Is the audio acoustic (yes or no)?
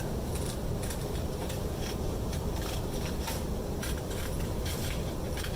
no